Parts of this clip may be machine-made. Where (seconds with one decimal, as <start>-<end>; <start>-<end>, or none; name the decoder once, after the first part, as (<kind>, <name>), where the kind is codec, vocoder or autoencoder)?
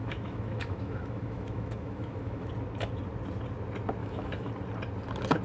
0.0-2.5 (autoencoder, DAC-VAE); 4.0-4.5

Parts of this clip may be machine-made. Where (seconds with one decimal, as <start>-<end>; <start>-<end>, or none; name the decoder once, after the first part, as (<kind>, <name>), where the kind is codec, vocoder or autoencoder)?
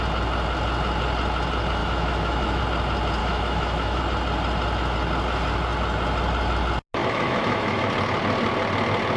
1.8-2.6 (autoencoder, DAC-VAE); 3.2-4.0; 7.0-7.9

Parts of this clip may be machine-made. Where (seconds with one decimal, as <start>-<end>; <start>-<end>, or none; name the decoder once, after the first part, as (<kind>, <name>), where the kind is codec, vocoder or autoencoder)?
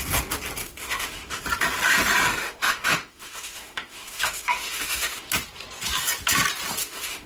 0.6-1.4 (autoencoder, DAC-VAE); 2.3-5.3; 6.8-7.3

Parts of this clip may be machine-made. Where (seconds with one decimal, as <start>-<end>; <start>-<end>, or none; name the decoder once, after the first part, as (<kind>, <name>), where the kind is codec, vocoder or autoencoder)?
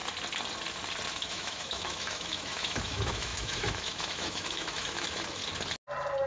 1.1-5.4 (autoencoder, DAC-VAE)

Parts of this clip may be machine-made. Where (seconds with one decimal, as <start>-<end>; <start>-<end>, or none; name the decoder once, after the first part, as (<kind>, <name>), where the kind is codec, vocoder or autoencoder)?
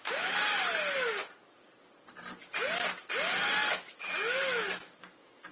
3.6-5.5 (autoencoder, DAC-VAE)